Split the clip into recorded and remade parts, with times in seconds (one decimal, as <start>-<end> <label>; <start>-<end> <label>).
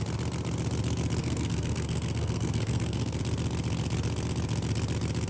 0.0-1.2 recorded; 1.2-3.2 remade; 3.2-5.3 recorded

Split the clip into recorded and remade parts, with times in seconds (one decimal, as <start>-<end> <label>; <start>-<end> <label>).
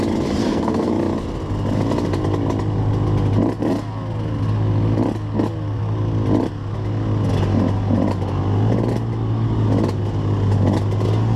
0.0-0.4 recorded; 0.4-0.9 remade; 0.9-11.4 recorded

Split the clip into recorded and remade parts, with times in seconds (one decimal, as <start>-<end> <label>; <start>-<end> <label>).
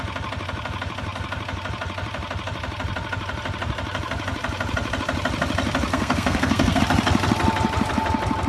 0.0-5.9 recorded; 5.9-6.8 remade; 6.8-8.5 recorded